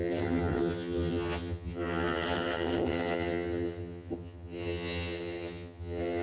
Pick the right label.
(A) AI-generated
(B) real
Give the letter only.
A